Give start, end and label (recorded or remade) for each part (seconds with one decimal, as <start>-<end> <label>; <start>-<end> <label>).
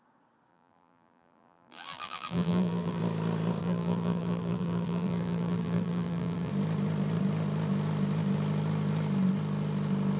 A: 0.0-0.5 recorded; 0.5-3.0 remade; 3.0-3.6 recorded; 3.6-6.5 remade; 6.5-10.2 recorded